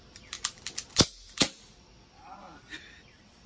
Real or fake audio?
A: real